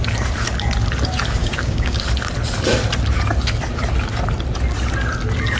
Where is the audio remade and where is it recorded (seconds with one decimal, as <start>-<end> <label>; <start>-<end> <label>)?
0.0-1.4 recorded; 1.4-2.0 remade; 2.0-5.6 recorded